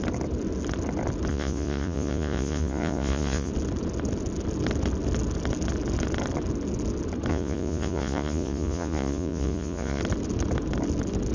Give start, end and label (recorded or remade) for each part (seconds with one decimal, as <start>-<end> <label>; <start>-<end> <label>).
0.0-1.3 recorded; 1.3-3.5 remade; 3.5-7.3 recorded; 7.3-10.0 remade; 10.0-11.3 recorded